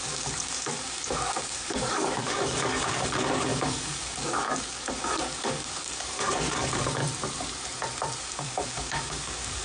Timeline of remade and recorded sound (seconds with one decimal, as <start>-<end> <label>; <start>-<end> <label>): 0.0-7.0 remade; 7.0-8.2 recorded; 8.2-9.6 remade